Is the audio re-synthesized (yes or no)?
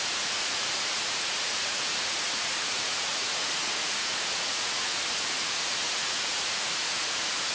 yes